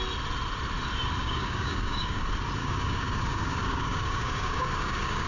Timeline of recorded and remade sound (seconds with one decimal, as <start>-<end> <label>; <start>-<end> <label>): 0.0-1.2 recorded; 1.2-2.2 remade; 2.2-2.6 recorded; 2.6-5.3 remade